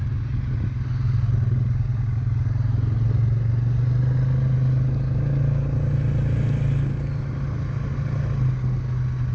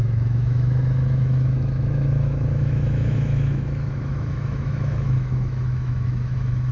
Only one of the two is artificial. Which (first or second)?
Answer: second